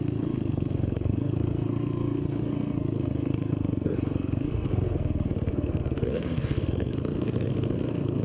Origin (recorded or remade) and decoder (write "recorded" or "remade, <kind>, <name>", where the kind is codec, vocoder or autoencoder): remade, codec, SNAC